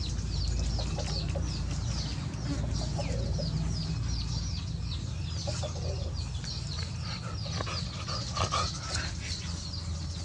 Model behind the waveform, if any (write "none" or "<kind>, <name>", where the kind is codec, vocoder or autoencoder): none